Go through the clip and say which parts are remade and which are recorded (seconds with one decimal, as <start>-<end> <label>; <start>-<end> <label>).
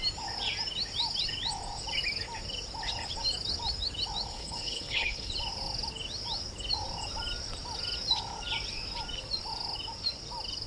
0.0-4.3 recorded; 4.3-5.3 remade; 5.3-10.7 recorded